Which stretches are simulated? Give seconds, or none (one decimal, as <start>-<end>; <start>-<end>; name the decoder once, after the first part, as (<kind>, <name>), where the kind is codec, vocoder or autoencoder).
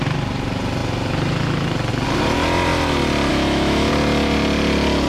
3.3-3.9 (autoencoder, DAC-VAE)